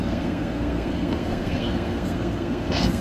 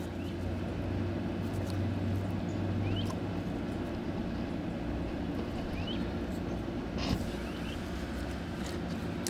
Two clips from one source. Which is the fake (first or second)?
first